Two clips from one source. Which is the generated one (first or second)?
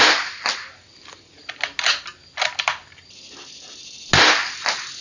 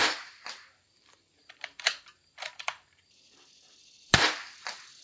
second